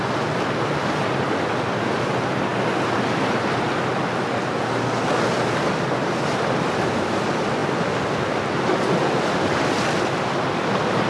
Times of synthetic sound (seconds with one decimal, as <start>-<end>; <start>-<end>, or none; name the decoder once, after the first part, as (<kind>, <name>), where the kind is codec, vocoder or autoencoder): none